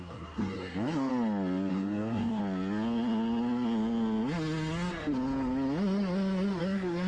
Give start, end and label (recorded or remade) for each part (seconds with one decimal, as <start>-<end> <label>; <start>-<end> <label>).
0.0-1.1 remade; 1.1-1.7 recorded; 1.7-2.4 remade; 2.4-6.6 recorded; 6.6-7.1 remade